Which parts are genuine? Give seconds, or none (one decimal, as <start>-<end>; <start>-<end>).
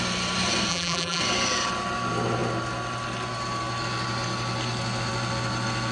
0.0-0.7; 1.2-5.9